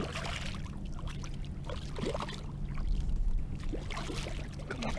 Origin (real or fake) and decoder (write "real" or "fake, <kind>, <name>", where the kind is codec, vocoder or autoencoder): real